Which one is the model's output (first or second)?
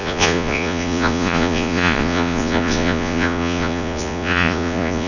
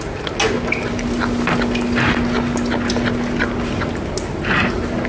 first